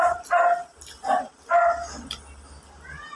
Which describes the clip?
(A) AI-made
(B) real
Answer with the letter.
B